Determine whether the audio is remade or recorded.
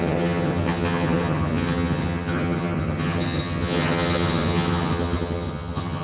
remade